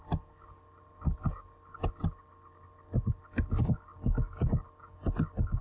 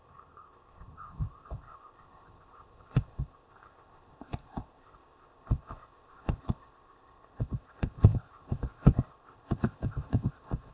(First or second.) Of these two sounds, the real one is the first